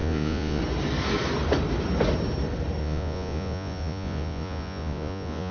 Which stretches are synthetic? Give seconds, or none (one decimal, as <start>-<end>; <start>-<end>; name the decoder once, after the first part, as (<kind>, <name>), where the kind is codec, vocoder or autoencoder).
0.0-0.6 (vocoder, Vocos); 2.8-5.5